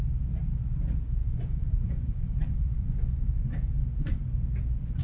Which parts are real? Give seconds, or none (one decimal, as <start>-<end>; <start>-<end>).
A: 0.0-1.2; 4.2-5.0